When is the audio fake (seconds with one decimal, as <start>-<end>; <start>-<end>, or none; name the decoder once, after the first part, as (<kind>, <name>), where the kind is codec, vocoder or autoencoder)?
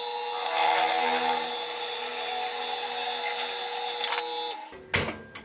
none